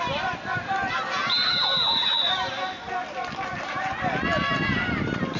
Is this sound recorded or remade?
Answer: recorded